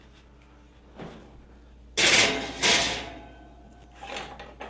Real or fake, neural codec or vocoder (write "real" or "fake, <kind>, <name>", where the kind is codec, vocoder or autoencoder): real